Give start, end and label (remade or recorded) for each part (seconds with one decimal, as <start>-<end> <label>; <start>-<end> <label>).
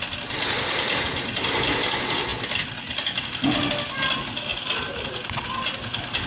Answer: 0.0-6.3 recorded